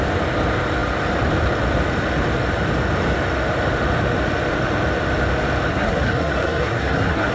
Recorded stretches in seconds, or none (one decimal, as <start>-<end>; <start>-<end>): 0.0-5.7